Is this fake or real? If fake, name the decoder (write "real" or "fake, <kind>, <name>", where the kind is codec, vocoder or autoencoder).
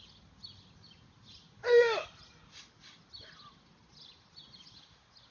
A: real